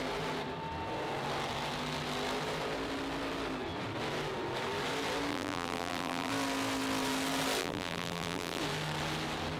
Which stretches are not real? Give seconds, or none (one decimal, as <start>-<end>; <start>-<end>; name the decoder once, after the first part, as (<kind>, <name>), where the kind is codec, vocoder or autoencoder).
5.3-6.3 (vocoder, BigVGAN v2); 7.6-8.6